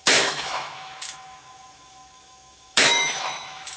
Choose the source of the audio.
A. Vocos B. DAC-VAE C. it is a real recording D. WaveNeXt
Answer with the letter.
B